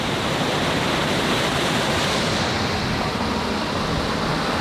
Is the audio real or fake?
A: real